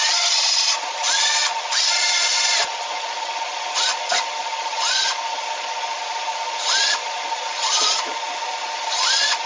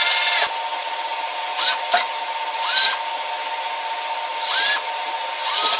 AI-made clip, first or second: first